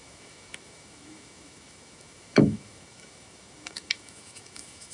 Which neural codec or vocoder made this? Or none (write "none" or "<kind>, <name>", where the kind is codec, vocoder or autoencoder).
autoencoder, DAC-VAE